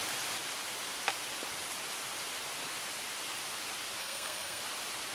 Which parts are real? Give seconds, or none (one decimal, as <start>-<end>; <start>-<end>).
0.0-4.0; 4.6-5.1

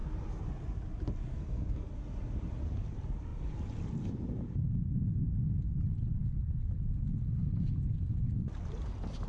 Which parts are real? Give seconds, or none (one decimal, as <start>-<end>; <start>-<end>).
0.0-1.3; 1.9-9.3

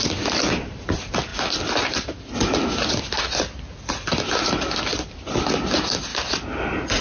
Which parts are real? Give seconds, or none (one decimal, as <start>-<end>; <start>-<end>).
0.0-7.0

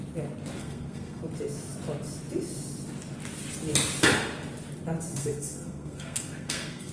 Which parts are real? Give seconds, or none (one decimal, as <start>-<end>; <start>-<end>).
0.0-0.6; 1.2-5.1

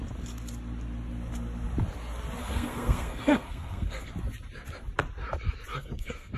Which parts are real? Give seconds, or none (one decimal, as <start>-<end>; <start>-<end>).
0.0-2.4; 4.1-5.7

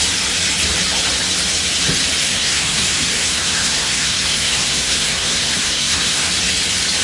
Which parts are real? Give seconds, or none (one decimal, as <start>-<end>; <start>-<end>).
0.0-2.2; 6.3-7.0